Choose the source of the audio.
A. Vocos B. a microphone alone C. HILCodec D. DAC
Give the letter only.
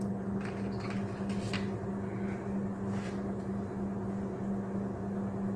B